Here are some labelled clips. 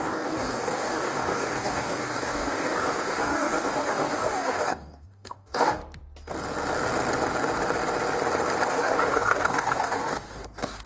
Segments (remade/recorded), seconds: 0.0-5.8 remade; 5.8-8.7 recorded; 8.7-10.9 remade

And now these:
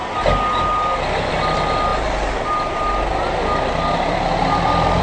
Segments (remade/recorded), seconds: 0.0-5.0 recorded

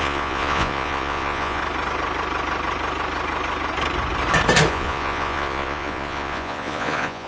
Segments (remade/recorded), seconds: 0.0-1.6 remade; 1.6-4.7 recorded; 4.7-7.3 remade

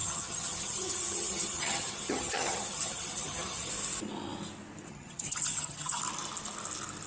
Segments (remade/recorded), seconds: 0.0-3.7 remade; 3.7-4.9 recorded; 4.9-6.0 remade; 6.0-7.1 recorded

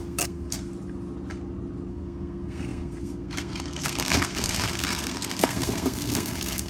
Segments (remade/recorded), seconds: 0.0-0.7 remade; 0.7-1.9 recorded; 1.9-6.7 remade

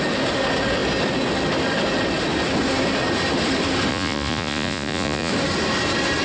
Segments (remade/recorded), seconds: 0.0-3.9 recorded; 3.9-5.3 remade; 5.3-6.2 recorded

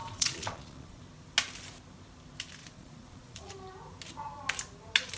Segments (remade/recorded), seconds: 0.0-1.0 remade; 1.0-2.6 recorded; 2.6-3.5 remade; 3.5-5.2 recorded